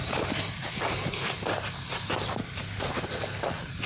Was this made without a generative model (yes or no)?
yes